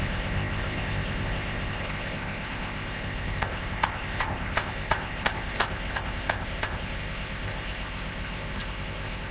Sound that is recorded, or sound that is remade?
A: remade